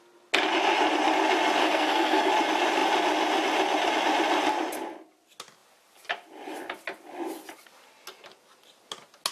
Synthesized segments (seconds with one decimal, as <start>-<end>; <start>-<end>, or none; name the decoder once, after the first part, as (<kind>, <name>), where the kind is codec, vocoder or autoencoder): 1.6-2.3 (codec, SNAC)